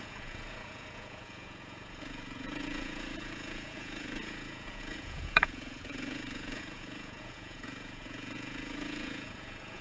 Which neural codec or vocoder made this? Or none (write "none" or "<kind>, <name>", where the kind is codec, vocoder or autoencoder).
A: vocoder, Vocos